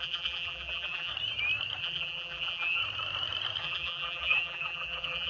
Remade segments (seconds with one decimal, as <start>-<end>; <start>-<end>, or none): 0.0-1.1; 1.8-2.8; 3.6-5.3